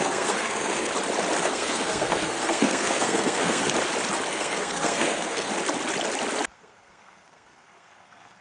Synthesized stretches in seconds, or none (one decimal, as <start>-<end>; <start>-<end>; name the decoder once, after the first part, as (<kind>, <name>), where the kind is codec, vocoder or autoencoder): 0.0-0.9 (codec, SNAC); 1.4-3.6; 4.3-5.5; 6.5-8.4